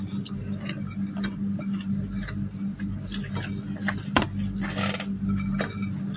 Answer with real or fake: real